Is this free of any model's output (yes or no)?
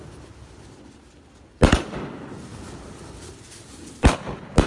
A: yes